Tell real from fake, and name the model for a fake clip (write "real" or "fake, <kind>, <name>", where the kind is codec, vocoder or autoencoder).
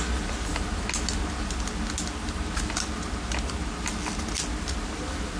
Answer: real